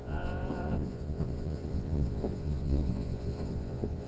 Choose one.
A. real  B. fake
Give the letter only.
B